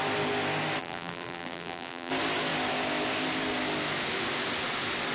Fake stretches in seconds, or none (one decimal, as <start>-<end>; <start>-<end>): 0.8-2.1